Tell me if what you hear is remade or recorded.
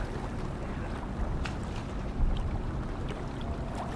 recorded